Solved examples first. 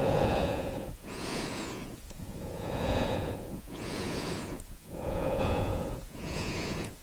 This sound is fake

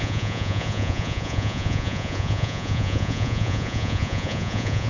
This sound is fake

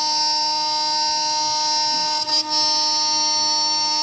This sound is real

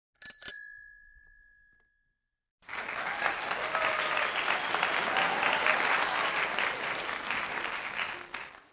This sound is real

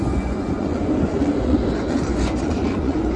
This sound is fake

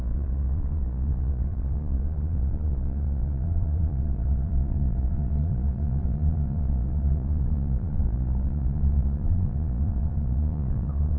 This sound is fake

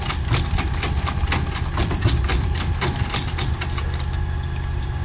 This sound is real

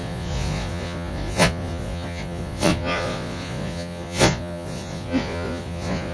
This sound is fake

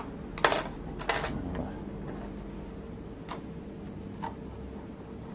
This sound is real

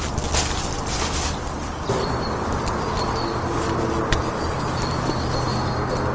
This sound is real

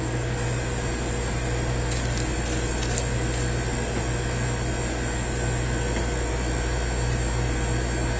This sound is real